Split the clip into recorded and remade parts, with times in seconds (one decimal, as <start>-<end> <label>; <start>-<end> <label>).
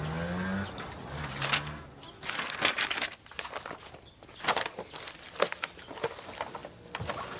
0.0-7.4 recorded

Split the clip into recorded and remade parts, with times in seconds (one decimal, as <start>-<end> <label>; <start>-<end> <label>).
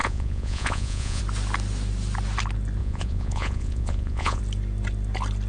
0.0-1.2 remade; 1.2-2.8 recorded; 2.8-4.4 remade; 4.4-5.5 recorded